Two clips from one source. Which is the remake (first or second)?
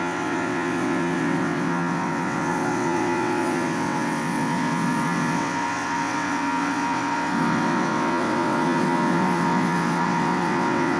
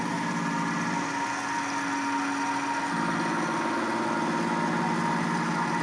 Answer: first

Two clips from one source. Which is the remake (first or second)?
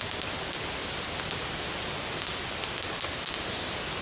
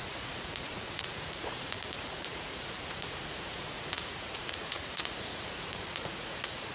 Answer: second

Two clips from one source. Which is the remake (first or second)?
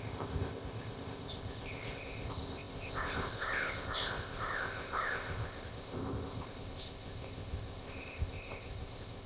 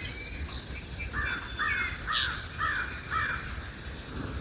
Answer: first